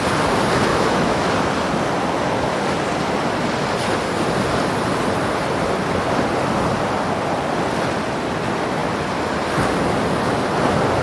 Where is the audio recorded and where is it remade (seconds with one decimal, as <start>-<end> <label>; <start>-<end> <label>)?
0.0-0.7 recorded; 0.7-1.3 remade; 1.3-11.0 recorded

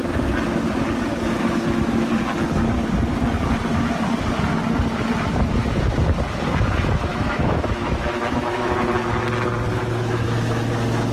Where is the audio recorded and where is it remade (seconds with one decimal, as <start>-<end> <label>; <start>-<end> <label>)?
0.0-1.1 recorded; 1.1-2.1 remade; 2.1-7.1 recorded; 7.1-8.8 remade; 8.8-9.7 recorded; 9.7-10.7 remade; 10.7-11.1 recorded

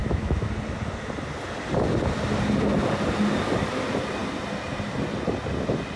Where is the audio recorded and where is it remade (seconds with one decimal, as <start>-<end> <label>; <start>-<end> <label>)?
0.0-0.5 remade; 0.5-6.0 recorded

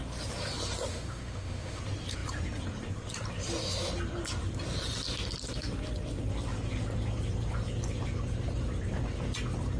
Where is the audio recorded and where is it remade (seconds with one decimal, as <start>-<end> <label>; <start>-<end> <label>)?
0.0-0.9 recorded; 0.9-1.8 remade; 1.8-9.8 recorded